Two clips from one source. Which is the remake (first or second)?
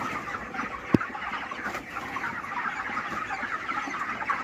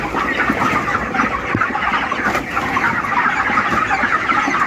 first